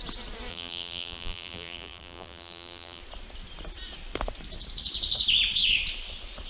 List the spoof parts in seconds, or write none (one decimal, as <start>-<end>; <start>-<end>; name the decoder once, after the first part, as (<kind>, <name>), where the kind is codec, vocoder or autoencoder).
0.5-3.0 (vocoder, BigVGAN v2)